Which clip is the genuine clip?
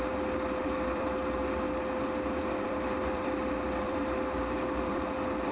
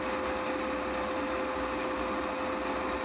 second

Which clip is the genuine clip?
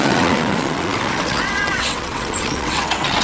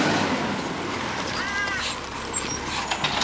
second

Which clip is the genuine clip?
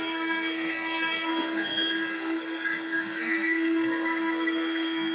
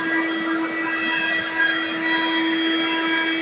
second